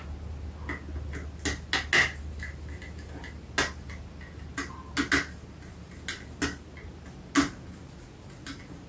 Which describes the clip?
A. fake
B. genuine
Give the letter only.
B